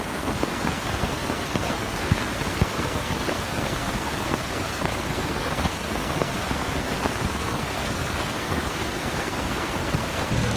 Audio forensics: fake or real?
fake